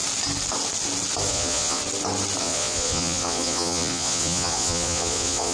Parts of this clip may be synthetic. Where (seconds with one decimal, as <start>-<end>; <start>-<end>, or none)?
1.3-1.8; 2.4-5.5